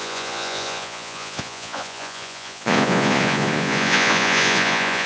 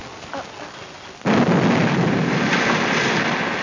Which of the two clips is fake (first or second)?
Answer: first